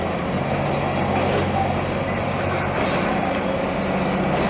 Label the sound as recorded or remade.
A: recorded